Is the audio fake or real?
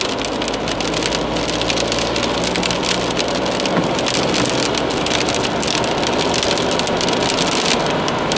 real